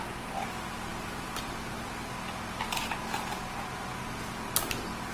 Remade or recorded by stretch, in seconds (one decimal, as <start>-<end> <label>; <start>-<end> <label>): 0.0-5.1 recorded